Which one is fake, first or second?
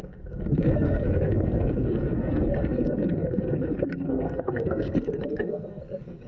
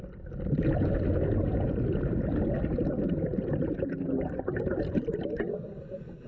first